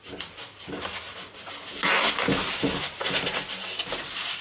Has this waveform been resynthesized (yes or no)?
no